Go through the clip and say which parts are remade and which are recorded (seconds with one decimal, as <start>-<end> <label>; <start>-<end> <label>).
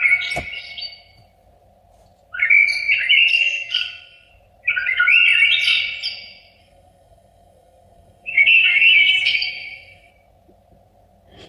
0.0-3.3 recorded; 3.3-4.3 remade; 4.3-6.6 recorded; 6.6-10.1 remade; 10.1-11.5 recorded